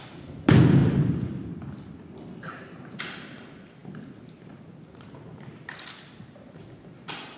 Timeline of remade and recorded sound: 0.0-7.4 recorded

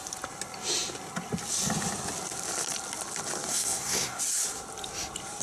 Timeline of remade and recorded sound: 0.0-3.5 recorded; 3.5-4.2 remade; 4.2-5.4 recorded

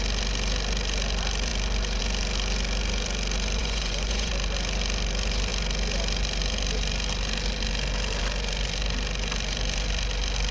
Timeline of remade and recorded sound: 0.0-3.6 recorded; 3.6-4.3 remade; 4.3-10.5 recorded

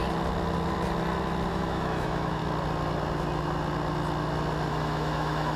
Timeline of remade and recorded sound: 0.0-1.5 recorded; 1.5-2.4 remade; 2.4-4.7 recorded; 4.7-5.6 remade